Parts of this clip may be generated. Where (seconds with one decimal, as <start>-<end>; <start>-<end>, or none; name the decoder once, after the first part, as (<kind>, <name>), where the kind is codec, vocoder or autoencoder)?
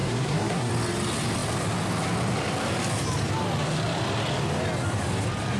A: 0.0-0.7 (codec, SNAC)